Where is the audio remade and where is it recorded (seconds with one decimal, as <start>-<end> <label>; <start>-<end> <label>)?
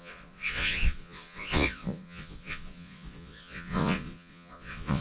0.0-5.0 remade